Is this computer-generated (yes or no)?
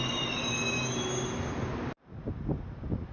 no